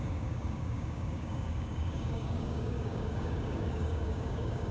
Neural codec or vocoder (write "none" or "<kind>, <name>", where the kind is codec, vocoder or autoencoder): codec, DAC